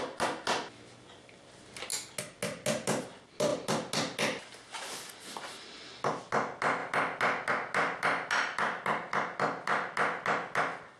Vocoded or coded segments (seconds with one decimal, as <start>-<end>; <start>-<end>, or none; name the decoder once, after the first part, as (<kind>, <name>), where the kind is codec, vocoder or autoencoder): none